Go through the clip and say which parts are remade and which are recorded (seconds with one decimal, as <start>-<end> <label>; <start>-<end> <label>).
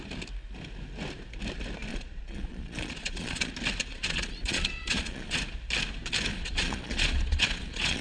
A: 0.0-1.9 recorded; 1.9-3.5 remade; 3.5-3.9 recorded; 3.9-5.4 remade; 5.4-6.3 recorded; 6.3-8.0 remade